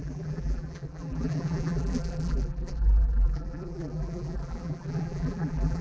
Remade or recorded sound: remade